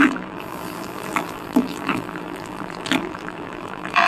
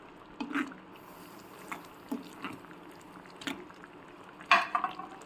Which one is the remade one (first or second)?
first